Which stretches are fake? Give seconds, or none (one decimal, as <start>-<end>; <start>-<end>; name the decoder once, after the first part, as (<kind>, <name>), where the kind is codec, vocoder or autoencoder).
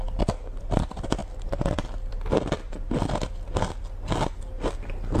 1.2-3.3 (vocoder, BigVGAN v2)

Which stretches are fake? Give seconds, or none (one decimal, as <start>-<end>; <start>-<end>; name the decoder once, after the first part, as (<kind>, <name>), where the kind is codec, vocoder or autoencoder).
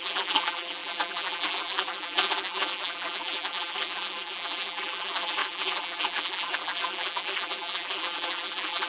0.0-8.9 (vocoder, BigVGAN v2)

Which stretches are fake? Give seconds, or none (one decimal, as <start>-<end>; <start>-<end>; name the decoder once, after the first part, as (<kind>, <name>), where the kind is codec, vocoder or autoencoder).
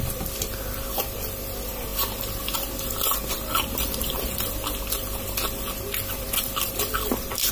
none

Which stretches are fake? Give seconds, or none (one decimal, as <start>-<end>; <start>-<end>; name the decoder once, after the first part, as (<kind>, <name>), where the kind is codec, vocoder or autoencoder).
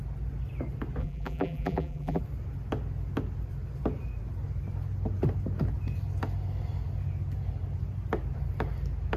1.0-2.2 (vocoder, BigVGAN v2)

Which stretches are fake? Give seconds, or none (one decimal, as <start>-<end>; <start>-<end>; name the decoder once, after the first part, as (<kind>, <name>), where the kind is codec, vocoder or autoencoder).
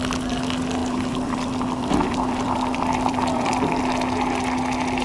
0.8-3.8 (vocoder, BigVGAN v2)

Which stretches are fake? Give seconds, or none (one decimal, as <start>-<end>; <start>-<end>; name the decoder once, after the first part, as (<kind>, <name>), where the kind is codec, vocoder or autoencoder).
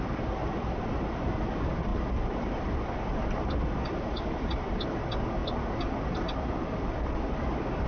1.9-4.7 (vocoder, BigVGAN v2)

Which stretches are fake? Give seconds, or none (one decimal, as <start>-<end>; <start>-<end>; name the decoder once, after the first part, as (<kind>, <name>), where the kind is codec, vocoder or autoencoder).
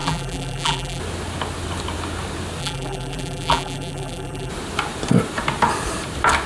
0.0-1.0 (vocoder, BigVGAN v2); 2.6-4.5